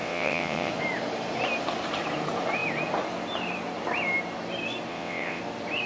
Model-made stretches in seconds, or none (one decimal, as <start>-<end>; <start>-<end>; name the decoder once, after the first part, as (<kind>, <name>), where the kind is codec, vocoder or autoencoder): 0.0-0.7 (vocoder, WaveNeXt); 4.9-5.4

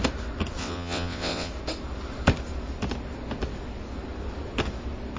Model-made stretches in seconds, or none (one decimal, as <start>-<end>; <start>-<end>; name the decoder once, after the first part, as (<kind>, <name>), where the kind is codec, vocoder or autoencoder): 0.6-1.5 (vocoder, WaveNeXt)

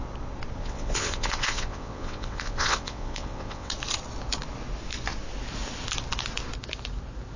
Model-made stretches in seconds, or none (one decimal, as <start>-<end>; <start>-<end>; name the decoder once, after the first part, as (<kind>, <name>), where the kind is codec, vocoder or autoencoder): 0.6-3.7 (vocoder, WaveNeXt)